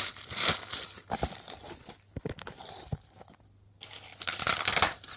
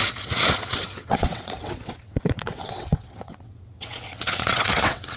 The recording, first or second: first